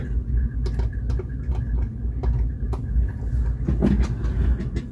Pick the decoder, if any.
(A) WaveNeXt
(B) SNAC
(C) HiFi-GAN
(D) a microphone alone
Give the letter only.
D